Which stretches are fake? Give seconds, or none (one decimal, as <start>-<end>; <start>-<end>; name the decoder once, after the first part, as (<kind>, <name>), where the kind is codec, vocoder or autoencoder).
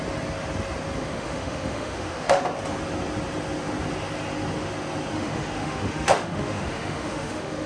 1.0-2.4 (autoencoder, DAC-VAE); 5.1-7.7